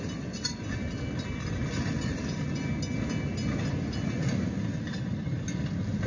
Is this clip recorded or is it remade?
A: recorded